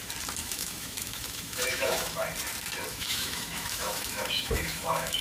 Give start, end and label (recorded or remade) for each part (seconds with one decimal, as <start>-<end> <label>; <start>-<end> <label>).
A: 0.0-0.4 recorded; 0.4-2.2 remade; 2.2-2.9 recorded; 2.9-5.2 remade